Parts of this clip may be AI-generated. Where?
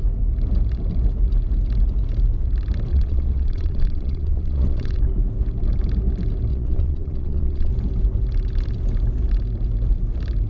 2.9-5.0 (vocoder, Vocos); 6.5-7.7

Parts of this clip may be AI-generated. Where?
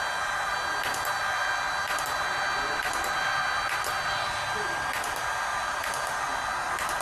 none